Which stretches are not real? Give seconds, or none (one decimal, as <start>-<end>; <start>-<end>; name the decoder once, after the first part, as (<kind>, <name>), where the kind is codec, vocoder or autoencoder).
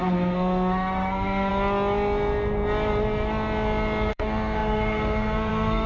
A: 0.0-1.5 (codec, SNAC); 4.1-5.9